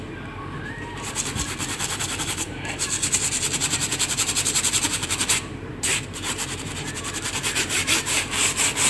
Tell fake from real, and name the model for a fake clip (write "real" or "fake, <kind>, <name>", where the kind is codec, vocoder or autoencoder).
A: fake, vocoder, BigVGAN v2